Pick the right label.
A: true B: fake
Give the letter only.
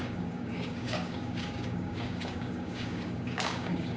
B